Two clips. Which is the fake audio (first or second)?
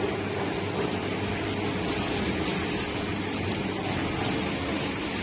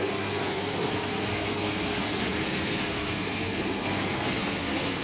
second